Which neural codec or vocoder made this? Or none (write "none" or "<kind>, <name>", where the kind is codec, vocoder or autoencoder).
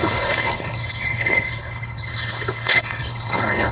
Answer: codec, HILCodec